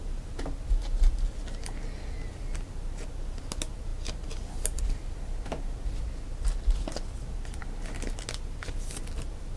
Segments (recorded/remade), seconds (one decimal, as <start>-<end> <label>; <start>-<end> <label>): 0.0-9.6 recorded